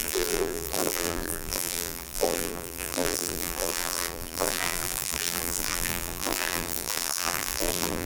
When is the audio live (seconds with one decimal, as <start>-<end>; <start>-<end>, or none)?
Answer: none